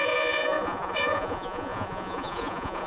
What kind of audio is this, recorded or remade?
remade